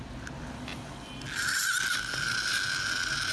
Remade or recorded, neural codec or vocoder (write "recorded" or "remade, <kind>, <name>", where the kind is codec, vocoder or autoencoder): recorded